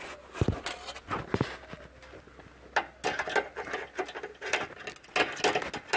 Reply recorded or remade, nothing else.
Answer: recorded